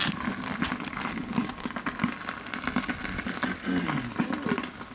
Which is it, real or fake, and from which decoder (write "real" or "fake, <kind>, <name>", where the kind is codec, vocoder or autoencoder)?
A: real